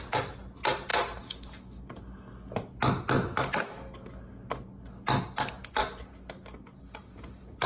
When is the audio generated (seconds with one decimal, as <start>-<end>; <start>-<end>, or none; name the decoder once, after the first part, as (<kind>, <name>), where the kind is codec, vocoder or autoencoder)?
none